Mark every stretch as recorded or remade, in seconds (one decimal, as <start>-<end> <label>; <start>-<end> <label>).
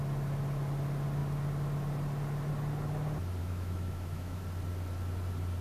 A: 0.0-3.4 recorded; 3.4-4.4 remade; 4.4-5.6 recorded